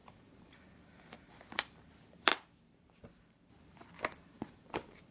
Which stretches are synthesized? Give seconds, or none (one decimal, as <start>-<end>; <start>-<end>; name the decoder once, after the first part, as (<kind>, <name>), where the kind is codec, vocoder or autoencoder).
0.0-5.1 (vocoder, BigVGAN v2)